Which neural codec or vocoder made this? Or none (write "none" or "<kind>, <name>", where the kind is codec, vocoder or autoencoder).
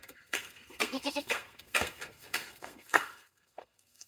codec, SNAC